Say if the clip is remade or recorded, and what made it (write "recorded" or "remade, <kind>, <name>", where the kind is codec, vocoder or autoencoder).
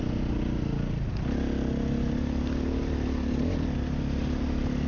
recorded